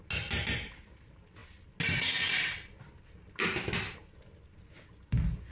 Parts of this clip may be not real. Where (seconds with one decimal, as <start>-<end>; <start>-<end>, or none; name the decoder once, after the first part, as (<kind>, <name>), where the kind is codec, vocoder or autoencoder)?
none